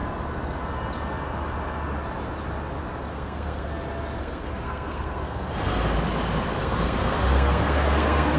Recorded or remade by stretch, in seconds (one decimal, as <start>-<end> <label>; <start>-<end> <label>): 0.0-3.1 recorded; 3.1-3.7 remade; 3.7-4.2 recorded; 4.2-5.5 remade; 5.5-6.6 recorded; 6.6-8.4 remade